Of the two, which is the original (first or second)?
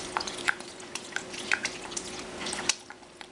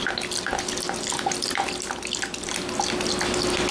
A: second